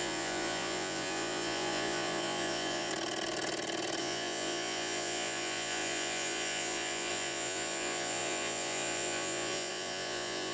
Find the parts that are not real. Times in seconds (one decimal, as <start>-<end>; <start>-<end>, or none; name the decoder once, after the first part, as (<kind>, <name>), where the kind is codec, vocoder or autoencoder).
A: 0.0-2.9 (vocoder, Vocos); 4.0-10.5